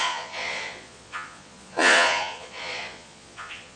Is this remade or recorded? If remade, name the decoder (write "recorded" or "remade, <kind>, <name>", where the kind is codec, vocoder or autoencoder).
remade, vocoder, Vocos